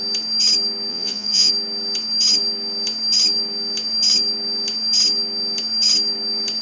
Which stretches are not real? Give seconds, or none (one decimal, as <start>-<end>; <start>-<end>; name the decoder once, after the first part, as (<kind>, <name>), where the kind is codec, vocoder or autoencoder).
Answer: 0.9-1.5 (vocoder, Vocos)